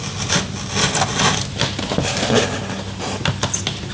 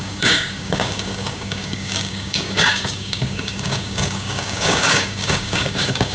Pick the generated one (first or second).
second